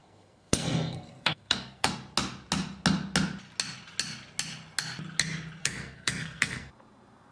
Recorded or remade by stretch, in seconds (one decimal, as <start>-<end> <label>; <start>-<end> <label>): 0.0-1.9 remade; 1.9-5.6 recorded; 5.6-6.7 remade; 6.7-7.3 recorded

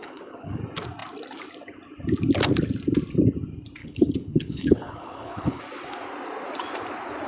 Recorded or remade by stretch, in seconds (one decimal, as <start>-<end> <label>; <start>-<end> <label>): 0.0-0.6 remade; 0.6-3.8 recorded; 3.8-5.6 remade; 5.6-7.3 recorded

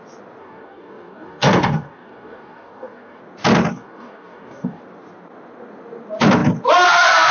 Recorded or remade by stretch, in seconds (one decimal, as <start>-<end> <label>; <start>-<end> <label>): 0.0-0.4 recorded; 0.4-3.2 remade; 3.2-3.7 recorded; 3.7-4.8 remade; 4.8-7.3 recorded

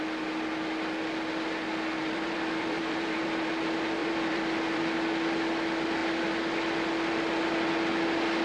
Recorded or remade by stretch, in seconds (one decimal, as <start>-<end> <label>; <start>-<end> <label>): 0.0-2.0 recorded; 2.0-3.5 remade; 3.5-4.0 recorded; 4.0-4.8 remade; 4.8-8.4 recorded

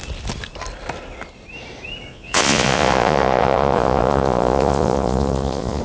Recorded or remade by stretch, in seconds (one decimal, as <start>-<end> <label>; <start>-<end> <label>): 0.0-2.1 recorded; 2.1-5.8 remade

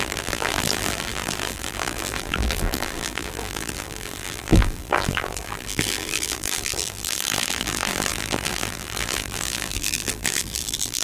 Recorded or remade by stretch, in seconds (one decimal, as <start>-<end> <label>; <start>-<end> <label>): 0.0-11.0 remade